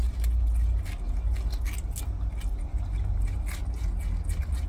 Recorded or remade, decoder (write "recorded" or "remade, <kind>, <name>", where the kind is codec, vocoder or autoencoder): recorded